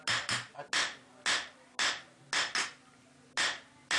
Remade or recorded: recorded